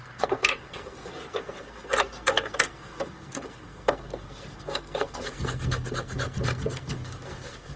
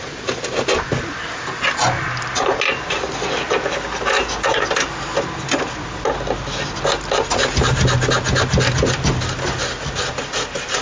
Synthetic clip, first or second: first